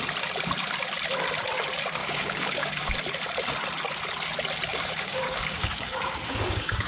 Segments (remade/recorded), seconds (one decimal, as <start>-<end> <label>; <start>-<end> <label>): 0.0-2.0 recorded; 2.0-2.9 remade; 2.9-4.7 recorded; 4.7-6.9 remade